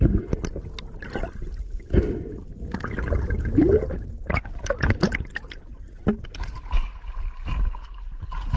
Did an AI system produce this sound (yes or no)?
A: no